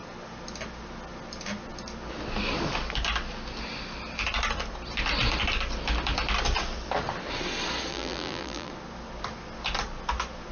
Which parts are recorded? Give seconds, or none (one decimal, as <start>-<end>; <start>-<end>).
0.0-7.9; 8.7-10.5